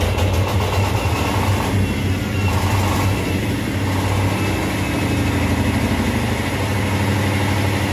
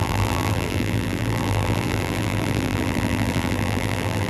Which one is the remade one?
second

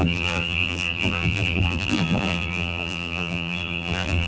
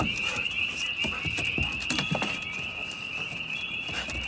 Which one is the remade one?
first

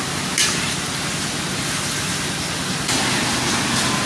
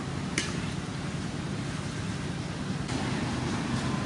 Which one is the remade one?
second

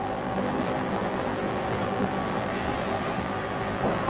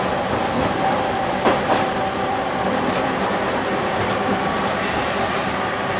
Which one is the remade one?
first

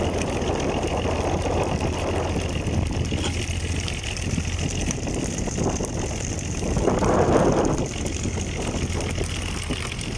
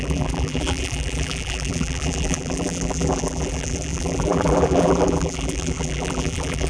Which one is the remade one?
second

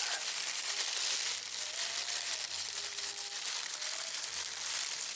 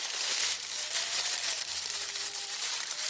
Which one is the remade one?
second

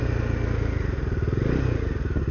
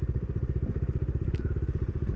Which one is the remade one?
second